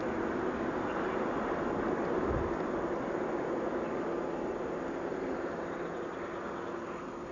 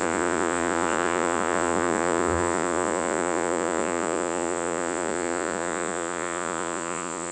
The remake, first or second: second